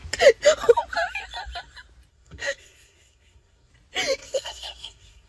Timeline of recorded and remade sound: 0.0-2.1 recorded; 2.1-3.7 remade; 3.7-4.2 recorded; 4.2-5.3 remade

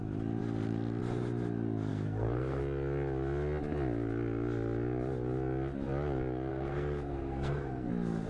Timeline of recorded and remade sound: 0.0-1.9 recorded; 1.9-2.6 remade; 2.6-6.5 recorded; 6.5-7.9 remade; 7.9-8.3 recorded

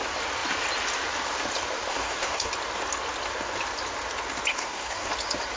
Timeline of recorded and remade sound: 0.0-1.9 recorded; 1.9-2.5 remade; 2.5-4.5 recorded; 4.5-5.1 remade; 5.1-5.6 recorded

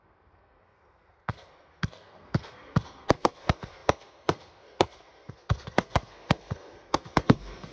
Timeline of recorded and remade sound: 0.0-7.7 remade

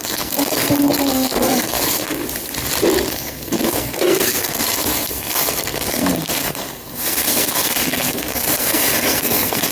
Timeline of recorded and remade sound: 0.0-2.2 remade; 2.2-3.1 recorded; 3.1-9.7 remade

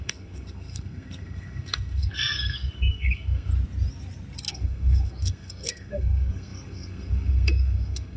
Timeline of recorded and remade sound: 0.0-3.5 remade; 3.5-4.5 recorded; 4.5-8.2 remade